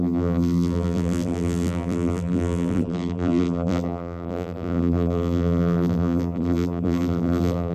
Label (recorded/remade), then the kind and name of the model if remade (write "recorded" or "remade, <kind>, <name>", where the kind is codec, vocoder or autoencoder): remade, vocoder, BigVGAN v2